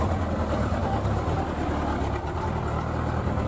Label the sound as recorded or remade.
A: recorded